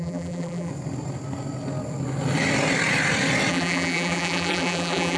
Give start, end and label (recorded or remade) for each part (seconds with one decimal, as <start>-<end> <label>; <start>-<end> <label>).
0.0-0.7 remade; 0.7-3.5 recorded; 3.5-5.2 remade